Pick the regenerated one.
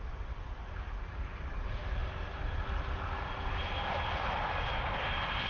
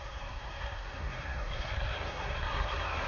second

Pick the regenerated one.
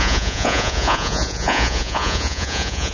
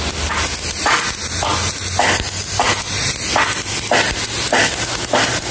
first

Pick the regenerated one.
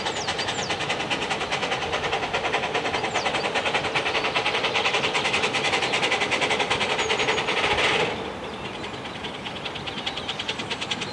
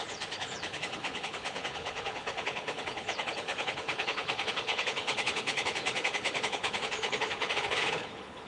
second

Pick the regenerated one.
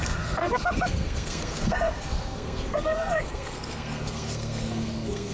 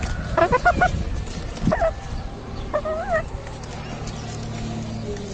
first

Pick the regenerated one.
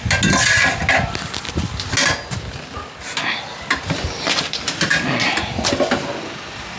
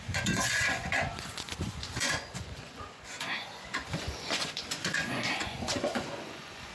second